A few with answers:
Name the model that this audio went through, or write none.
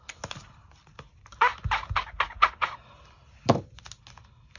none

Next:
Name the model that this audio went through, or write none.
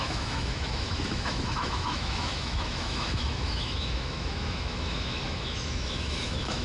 autoencoder, DAC-VAE